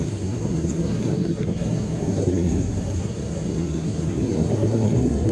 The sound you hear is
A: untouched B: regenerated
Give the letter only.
B